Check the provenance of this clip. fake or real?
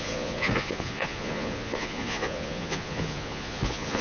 fake